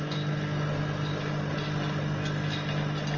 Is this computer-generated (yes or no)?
no